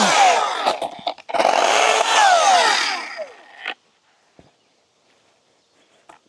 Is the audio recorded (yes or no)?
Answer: yes